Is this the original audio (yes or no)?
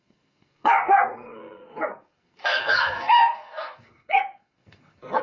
no